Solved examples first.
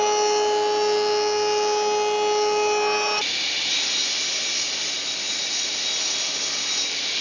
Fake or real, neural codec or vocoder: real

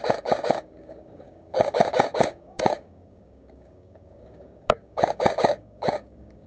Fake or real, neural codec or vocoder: fake, codec, DAC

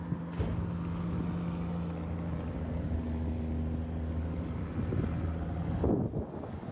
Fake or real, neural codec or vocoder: real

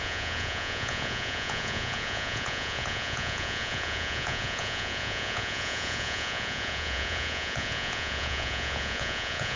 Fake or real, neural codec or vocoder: fake, vocoder, Vocos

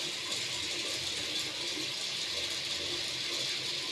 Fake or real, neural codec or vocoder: real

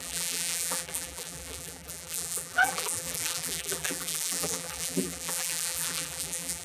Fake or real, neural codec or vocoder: fake, vocoder, BigVGAN v2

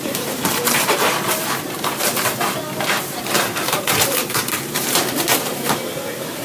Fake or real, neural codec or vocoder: fake, vocoder, BigVGAN v2